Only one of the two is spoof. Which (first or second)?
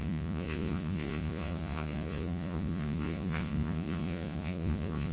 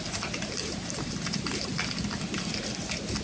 first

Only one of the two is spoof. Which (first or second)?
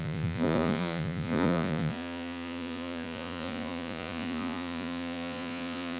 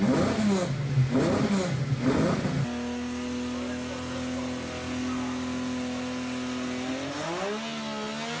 first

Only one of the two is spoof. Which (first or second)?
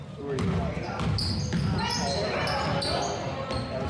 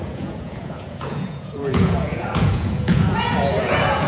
second